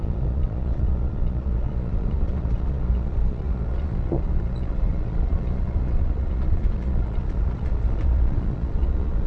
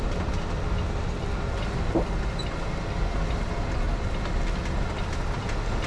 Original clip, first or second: second